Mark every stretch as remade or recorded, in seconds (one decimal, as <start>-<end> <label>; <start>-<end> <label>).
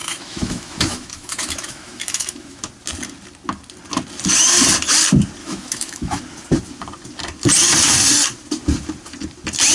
0.0-2.6 remade; 2.6-5.4 recorded; 5.4-6.2 remade; 6.2-9.7 recorded